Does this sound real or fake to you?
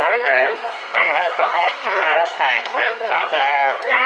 fake